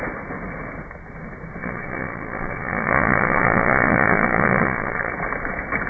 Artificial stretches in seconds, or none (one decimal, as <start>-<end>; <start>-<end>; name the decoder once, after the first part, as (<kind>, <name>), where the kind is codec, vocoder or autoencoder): 1.6-5.1 (vocoder, Vocos)